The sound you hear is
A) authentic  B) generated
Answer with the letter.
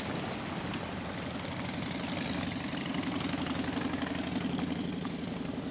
A